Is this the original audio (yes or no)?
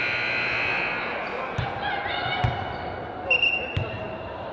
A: yes